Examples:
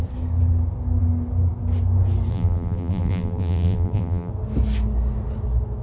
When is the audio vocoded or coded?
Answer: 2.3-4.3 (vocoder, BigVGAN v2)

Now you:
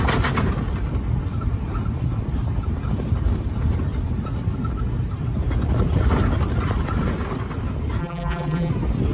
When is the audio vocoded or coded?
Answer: 8.0-8.7 (vocoder, BigVGAN v2)

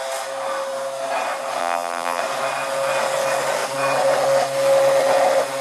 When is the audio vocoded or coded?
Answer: 1.6-2.2 (vocoder, BigVGAN v2)

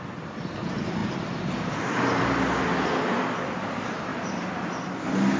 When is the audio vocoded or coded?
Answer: none

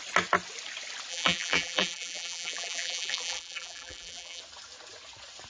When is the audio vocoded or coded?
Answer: 1.1-4.4 (vocoder, BigVGAN v2)

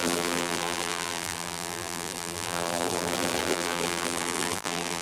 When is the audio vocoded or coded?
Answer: 0.0-5.0 (vocoder, BigVGAN v2)

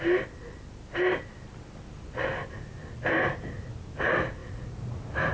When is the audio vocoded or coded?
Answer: none

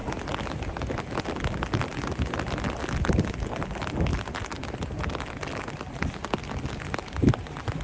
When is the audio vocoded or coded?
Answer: 4.1-5.1 (vocoder, BigVGAN v2)